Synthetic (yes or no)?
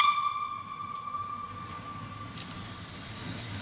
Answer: no